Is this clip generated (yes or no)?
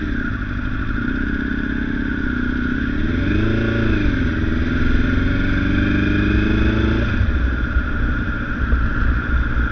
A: no